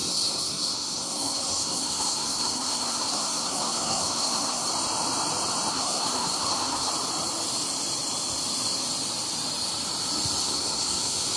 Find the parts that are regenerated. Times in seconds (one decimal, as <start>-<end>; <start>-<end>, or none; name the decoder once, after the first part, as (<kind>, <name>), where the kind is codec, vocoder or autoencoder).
0.0-4.7 (codec, SNAC); 5.7-6.9; 10.4-11.4